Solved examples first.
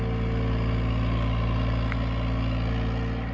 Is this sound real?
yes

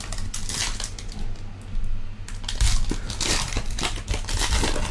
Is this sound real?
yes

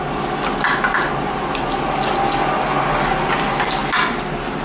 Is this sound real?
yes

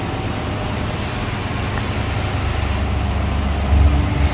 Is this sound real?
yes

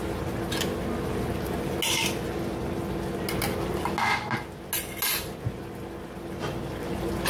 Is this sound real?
yes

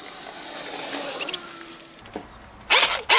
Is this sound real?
yes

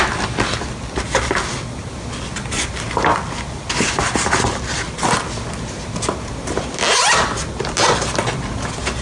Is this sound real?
yes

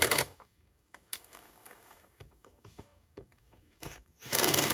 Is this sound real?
no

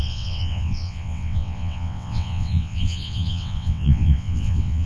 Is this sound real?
no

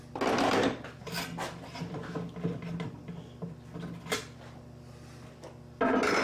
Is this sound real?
yes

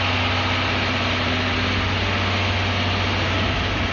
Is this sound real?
yes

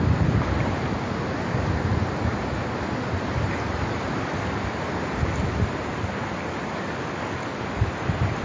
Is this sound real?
yes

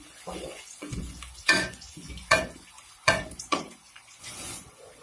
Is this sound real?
no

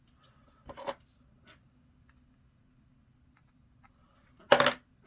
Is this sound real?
yes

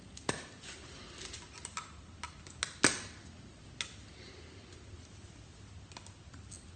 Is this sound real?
yes